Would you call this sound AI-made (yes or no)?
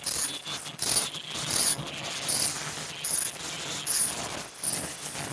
no